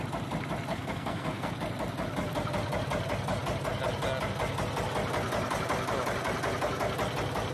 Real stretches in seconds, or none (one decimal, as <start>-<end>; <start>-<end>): 0.0-0.7; 1.5-7.5